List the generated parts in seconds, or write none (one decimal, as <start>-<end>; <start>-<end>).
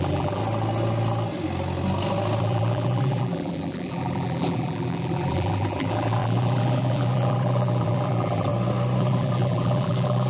0.0-0.4; 2.4-8.5; 9.0-10.3